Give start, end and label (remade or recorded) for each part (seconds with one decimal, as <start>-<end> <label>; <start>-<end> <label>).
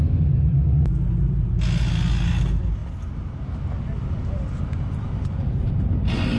0.0-6.4 recorded